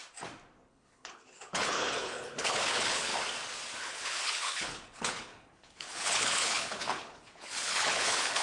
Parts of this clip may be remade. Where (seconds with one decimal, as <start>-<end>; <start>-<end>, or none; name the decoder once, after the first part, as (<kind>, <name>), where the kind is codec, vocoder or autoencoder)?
0.7-3.1 (codec, HILCodec); 3.8-8.4